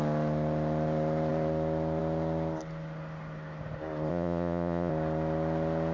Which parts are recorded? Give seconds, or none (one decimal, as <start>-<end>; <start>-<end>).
0.0-4.1; 4.9-5.9